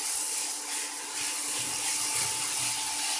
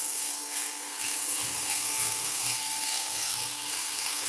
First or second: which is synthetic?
second